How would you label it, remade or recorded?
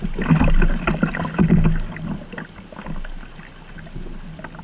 recorded